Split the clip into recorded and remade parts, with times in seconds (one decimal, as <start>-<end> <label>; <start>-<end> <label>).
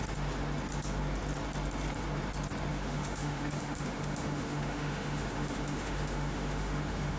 0.0-2.7 recorded; 2.7-7.2 remade